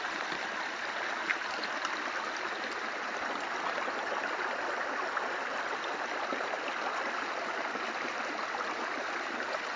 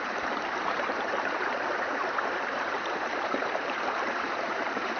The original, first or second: first